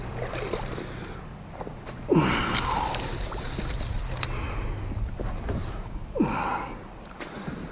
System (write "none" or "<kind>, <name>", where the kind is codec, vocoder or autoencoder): none